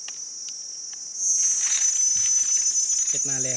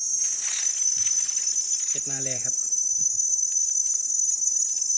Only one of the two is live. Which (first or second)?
first